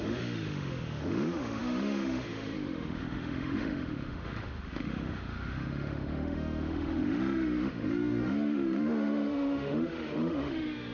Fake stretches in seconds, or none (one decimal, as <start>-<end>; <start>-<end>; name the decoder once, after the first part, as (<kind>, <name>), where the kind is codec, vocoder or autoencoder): 0.0-10.9 (autoencoder, DAC-VAE)

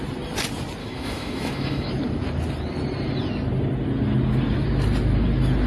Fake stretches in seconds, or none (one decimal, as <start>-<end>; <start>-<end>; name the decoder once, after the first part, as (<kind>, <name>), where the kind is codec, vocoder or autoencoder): 0.8-1.9 (autoencoder, DAC-VAE)

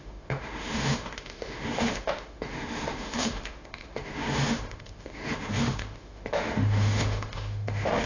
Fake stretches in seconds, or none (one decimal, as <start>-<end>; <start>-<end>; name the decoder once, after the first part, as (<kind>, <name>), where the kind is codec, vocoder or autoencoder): 0.0-8.1 (autoencoder, DAC-VAE)